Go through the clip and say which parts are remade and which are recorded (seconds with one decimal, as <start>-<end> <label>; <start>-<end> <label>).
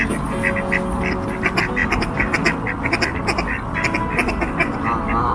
0.0-5.3 recorded